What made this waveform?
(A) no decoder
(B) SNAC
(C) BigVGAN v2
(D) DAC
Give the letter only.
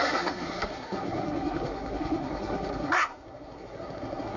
B